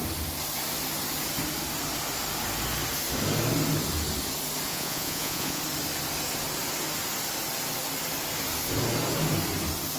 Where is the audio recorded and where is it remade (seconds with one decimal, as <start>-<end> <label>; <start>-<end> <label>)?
0.0-4.7 recorded; 4.7-5.6 remade; 5.6-10.0 recorded